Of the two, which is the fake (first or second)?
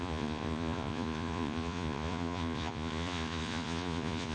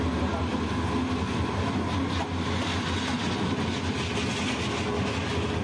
first